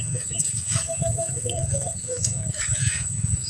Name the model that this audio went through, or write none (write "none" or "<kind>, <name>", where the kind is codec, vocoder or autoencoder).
codec, SNAC